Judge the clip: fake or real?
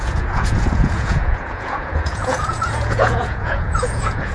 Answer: fake